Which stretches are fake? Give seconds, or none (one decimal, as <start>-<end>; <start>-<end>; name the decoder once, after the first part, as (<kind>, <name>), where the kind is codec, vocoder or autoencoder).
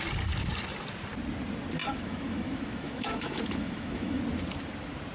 1.8-4.2 (autoencoder, DAC-VAE)